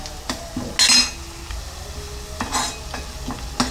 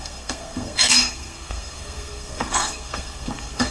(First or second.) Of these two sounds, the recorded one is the first